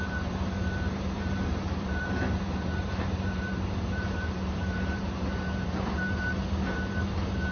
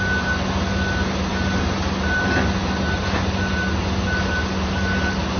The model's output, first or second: first